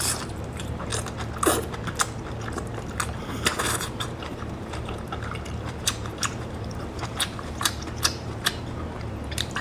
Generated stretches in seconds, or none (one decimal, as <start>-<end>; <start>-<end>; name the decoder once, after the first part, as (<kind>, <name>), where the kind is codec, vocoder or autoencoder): 0.0-0.9 (vocoder, BigVGAN v2); 3.6-9.6